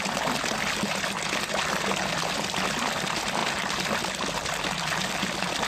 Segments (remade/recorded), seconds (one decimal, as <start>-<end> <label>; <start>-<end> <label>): 0.0-5.7 recorded